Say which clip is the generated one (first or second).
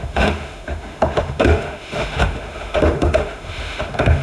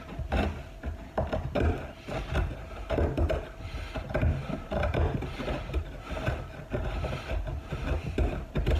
first